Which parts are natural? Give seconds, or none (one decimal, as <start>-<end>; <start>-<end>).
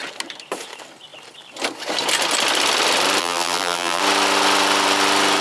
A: 0.0-3.2; 4.0-5.4